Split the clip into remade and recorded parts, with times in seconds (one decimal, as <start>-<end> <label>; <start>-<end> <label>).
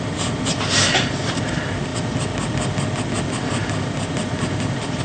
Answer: 0.0-5.0 recorded